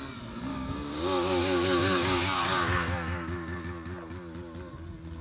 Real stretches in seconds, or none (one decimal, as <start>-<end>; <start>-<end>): 0.0-0.5; 3.6-5.2